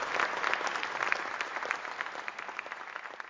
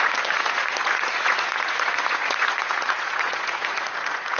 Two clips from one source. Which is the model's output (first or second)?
second